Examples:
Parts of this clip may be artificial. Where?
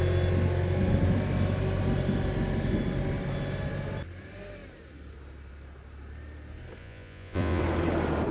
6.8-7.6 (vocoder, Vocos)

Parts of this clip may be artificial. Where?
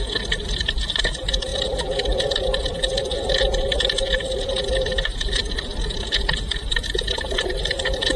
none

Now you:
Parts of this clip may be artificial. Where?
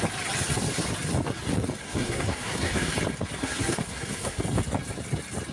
1.8-2.9 (codec, SNAC); 3.4-4.4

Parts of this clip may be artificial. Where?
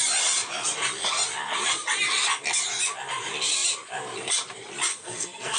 4.9-5.6 (codec, SNAC)